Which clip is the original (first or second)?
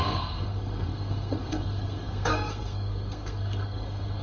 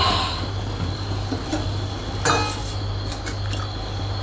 second